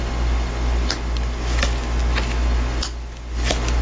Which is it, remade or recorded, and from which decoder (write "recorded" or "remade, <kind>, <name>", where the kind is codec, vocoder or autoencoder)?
recorded